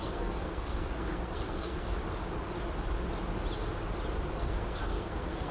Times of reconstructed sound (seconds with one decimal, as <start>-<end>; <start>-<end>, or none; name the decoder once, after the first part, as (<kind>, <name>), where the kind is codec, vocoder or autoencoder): 0.0-2.0 (codec, SNAC); 4.4-5.5